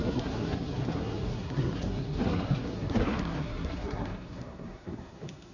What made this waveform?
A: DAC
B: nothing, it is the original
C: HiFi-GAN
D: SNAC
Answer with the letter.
D